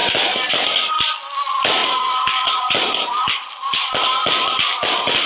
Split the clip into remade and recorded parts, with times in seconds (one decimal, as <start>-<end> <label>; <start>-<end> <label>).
0.0-5.3 recorded